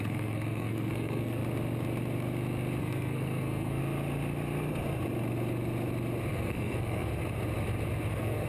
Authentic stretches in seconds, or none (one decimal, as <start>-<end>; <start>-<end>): 1.4-2.8; 3.8-6.3; 7.1-8.1